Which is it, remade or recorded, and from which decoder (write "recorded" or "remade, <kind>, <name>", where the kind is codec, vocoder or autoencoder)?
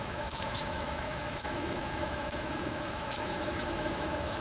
remade, autoencoder, DAC-VAE